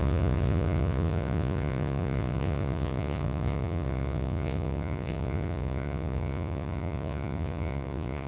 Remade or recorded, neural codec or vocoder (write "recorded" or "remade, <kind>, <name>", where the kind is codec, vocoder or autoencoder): remade, vocoder, Vocos